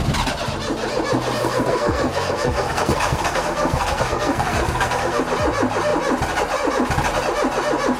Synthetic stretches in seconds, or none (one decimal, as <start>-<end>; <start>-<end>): 1.4-5.2